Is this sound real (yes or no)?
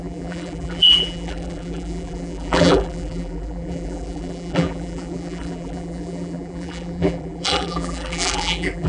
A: no